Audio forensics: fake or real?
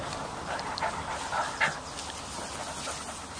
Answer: real